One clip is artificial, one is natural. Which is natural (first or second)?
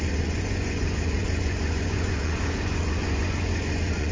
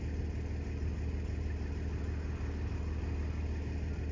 second